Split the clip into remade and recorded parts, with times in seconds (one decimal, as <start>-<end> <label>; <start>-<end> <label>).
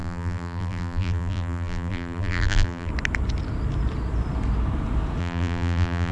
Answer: 0.0-2.9 remade; 2.9-5.2 recorded; 5.2-6.1 remade